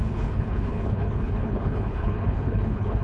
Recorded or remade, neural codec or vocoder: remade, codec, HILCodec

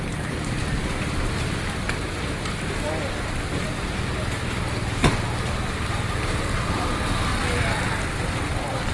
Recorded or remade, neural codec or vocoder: recorded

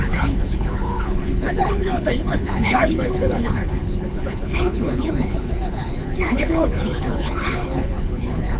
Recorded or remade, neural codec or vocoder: remade, codec, HILCodec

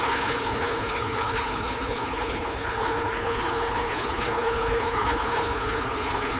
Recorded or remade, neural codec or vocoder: remade, codec, HILCodec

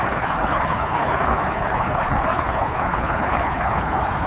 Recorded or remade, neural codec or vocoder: remade, codec, HILCodec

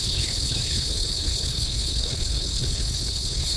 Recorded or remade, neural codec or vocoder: remade, codec, HILCodec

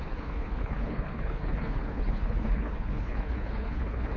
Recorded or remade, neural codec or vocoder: remade, codec, HILCodec